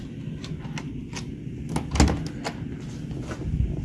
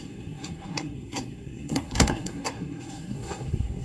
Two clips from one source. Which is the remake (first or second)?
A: second